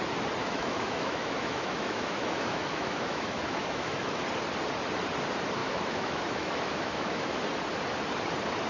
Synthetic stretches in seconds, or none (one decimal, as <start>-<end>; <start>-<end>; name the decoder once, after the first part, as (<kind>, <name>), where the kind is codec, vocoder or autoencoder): 0.4-4.2 (autoencoder, DAC-VAE); 5.6-7.4